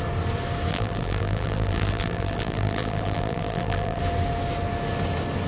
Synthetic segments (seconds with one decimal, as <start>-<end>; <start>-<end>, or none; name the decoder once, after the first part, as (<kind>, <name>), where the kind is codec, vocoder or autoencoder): 0.7-4.0 (vocoder, BigVGAN v2)